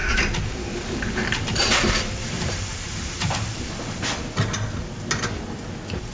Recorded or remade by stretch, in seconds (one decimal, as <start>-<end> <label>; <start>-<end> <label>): 0.0-3.7 remade; 3.7-6.1 recorded